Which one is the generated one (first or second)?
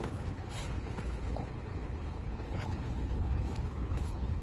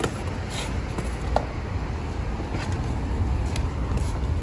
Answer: first